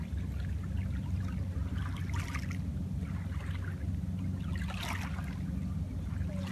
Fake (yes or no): no